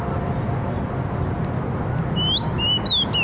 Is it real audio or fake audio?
real